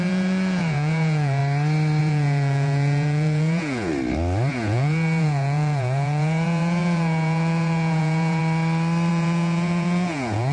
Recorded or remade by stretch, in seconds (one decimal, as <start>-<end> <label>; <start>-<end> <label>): 0.0-1.4 remade; 1.4-2.0 recorded; 2.0-3.9 remade; 3.9-4.5 recorded; 4.5-8.4 remade; 8.4-9.1 recorded; 9.1-10.5 remade